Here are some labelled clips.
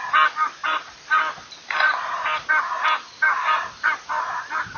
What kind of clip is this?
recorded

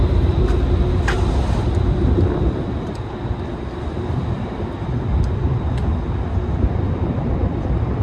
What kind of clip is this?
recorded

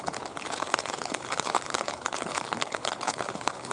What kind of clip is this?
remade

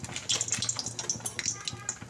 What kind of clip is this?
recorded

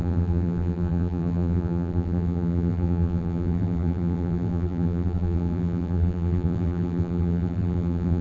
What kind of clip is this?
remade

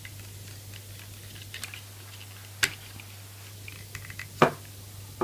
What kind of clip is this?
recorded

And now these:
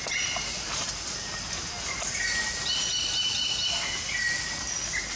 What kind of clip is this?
recorded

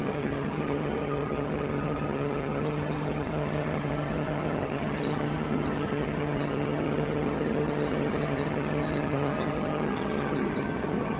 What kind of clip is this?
remade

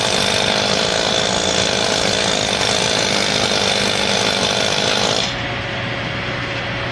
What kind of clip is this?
recorded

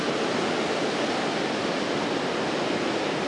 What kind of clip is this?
recorded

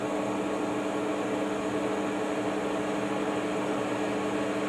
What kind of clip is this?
recorded